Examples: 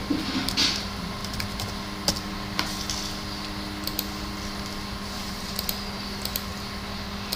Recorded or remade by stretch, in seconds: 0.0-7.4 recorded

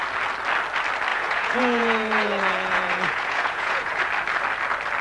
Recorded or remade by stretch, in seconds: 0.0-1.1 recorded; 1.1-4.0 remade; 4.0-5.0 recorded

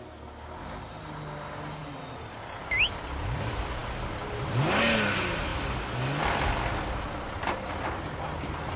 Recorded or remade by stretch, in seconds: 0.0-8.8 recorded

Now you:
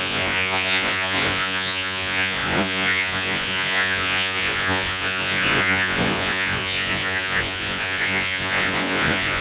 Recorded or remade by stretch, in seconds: 0.0-9.4 remade